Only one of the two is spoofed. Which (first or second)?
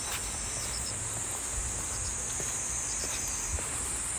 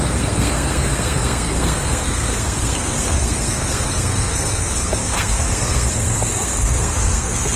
second